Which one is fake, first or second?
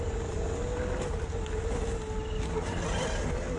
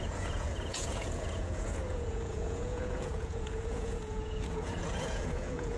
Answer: second